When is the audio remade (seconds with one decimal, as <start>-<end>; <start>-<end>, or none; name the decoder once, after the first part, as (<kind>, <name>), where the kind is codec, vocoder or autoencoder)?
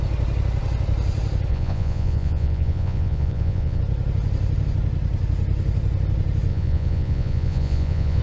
1.5-3.8 (vocoder, Vocos); 6.5-8.2